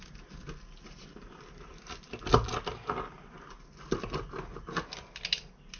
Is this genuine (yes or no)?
yes